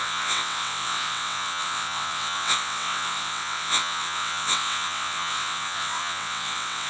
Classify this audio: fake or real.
fake